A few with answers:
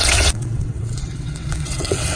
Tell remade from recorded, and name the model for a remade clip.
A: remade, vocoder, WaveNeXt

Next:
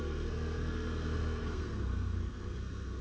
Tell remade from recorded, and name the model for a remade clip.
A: remade, codec, SNAC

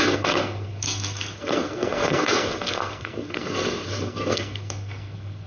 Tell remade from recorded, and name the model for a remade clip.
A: remade, codec, SNAC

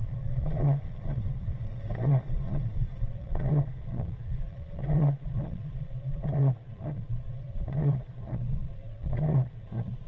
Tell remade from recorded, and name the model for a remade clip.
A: remade, vocoder, Vocos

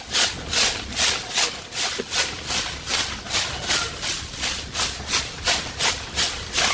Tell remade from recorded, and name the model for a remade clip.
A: recorded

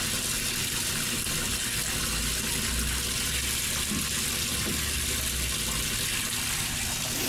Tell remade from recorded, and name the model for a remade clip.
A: recorded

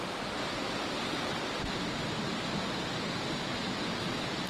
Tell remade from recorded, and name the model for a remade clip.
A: recorded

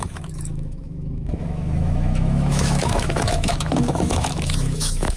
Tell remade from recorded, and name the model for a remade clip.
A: remade, autoencoder, DAC-VAE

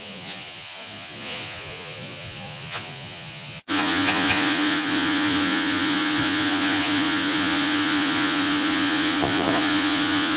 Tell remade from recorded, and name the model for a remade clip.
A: remade, vocoder, Vocos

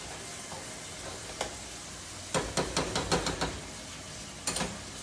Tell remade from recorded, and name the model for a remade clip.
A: recorded